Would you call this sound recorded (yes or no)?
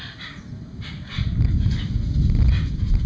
yes